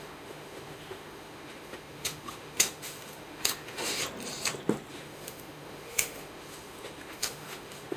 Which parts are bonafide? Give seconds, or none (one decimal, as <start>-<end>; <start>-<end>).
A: 4.0-4.9